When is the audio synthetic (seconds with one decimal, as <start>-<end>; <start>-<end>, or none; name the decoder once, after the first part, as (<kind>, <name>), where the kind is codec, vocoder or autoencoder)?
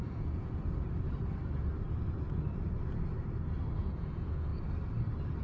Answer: 0.0-0.6 (vocoder, Vocos); 3.8-4.5